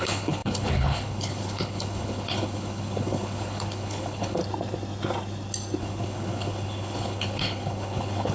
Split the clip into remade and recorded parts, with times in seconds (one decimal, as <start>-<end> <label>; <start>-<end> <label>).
0.0-4.4 remade; 4.4-5.8 recorded; 5.8-8.3 remade